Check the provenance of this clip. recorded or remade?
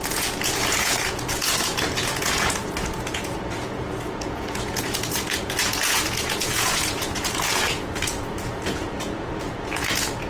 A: remade